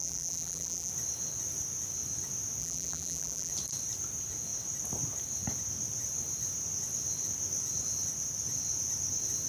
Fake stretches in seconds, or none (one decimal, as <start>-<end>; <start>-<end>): 0.0-0.9; 2.6-3.5